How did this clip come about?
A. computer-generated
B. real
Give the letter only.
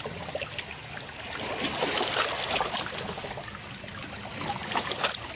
B